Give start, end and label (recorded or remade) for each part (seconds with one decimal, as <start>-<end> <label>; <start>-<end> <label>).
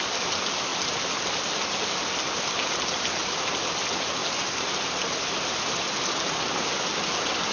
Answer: 0.0-7.5 recorded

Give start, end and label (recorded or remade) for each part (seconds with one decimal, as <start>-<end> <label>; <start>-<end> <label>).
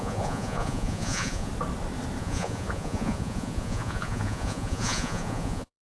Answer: 0.0-1.5 remade; 1.5-2.2 recorded; 2.2-5.9 remade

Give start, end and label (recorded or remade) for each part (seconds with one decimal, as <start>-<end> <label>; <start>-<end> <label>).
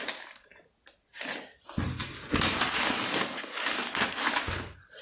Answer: 0.0-5.0 recorded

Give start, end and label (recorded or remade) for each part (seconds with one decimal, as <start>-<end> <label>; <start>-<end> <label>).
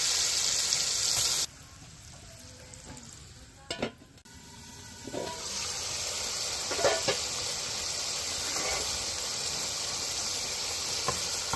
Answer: 0.0-11.6 recorded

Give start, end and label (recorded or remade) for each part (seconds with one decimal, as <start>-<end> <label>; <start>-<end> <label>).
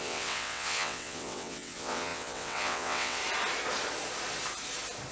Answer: 0.0-3.2 remade; 3.2-5.1 recorded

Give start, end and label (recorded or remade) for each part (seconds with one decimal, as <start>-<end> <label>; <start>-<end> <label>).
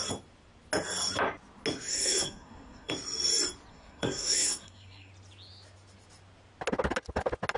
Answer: 0.0-1.9 recorded; 1.9-2.9 remade; 2.9-3.7 recorded; 3.7-5.1 remade; 5.1-7.6 recorded